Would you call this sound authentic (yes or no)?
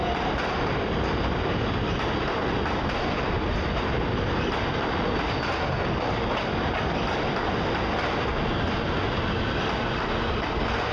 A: yes